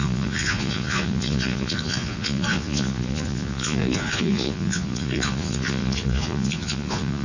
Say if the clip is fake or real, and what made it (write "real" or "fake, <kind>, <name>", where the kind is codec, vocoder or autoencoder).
fake, vocoder, Vocos